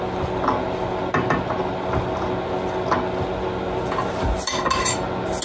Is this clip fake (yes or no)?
no